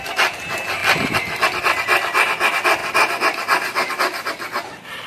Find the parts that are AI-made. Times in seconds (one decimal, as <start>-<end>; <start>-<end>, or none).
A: none